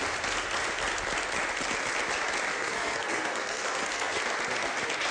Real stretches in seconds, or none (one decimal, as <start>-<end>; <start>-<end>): 0.0-2.5; 4.2-5.1